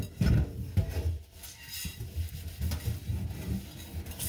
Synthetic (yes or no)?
no